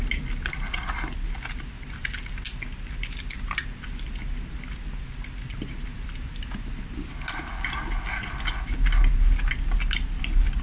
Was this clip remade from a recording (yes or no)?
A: no